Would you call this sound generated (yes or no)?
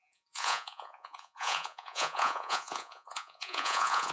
yes